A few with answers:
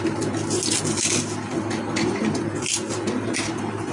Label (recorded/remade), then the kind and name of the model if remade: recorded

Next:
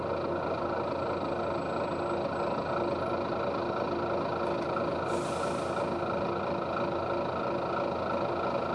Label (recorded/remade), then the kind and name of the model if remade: recorded